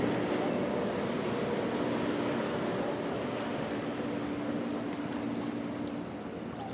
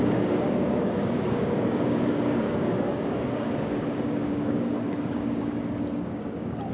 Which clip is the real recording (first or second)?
first